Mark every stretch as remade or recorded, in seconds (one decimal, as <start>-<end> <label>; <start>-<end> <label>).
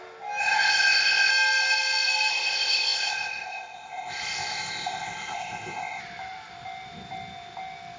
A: 0.0-0.4 recorded; 0.4-1.3 remade; 1.3-2.3 recorded; 2.3-6.0 remade; 6.0-8.0 recorded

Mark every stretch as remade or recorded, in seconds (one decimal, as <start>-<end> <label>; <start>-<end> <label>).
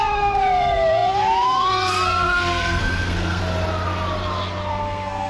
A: 0.0-3.4 remade; 3.4-4.7 recorded; 4.7-5.3 remade